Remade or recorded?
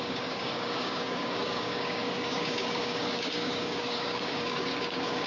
remade